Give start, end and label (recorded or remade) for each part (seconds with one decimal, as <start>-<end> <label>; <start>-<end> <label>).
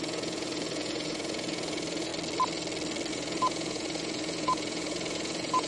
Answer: 0.0-2.1 remade; 2.1-3.1 recorded; 3.1-5.7 remade